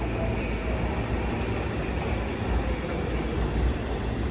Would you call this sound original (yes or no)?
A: yes